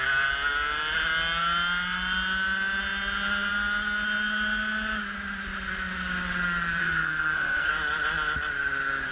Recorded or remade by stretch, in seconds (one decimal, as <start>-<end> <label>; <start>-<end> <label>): 0.0-6.8 recorded; 6.8-7.7 remade; 7.7-9.1 recorded